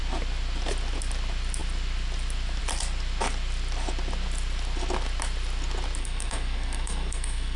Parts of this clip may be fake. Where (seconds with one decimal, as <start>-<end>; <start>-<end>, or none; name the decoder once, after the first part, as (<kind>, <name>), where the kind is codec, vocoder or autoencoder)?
6.0-7.6 (codec, SNAC)